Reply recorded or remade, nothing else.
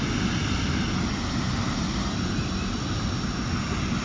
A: recorded